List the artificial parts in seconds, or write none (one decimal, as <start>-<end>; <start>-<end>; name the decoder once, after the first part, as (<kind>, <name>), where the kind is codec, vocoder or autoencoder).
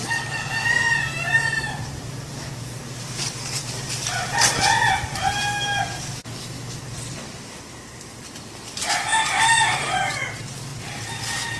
6.2-6.8 (autoencoder, DAC-VAE)